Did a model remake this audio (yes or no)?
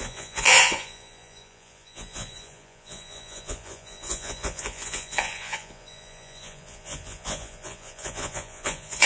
yes